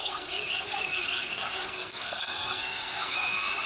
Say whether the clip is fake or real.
fake